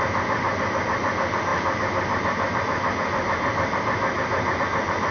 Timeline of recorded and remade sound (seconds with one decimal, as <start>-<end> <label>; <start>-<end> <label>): 0.0-5.1 recorded